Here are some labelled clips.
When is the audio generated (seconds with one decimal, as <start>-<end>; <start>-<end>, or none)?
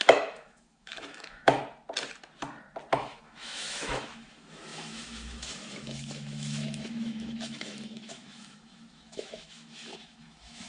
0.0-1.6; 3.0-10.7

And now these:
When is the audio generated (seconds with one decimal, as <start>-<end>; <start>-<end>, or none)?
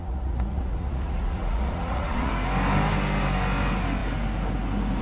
0.0-2.3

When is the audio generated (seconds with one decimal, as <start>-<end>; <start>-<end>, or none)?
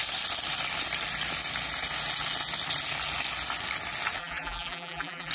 4.2-5.3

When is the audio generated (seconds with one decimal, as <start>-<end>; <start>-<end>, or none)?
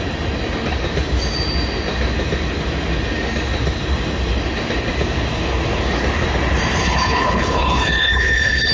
6.8-8.7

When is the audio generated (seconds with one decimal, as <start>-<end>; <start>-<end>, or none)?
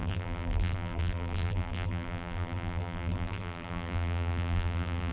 0.0-5.1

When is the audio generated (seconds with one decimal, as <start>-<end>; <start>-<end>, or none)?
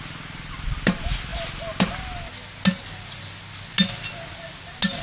none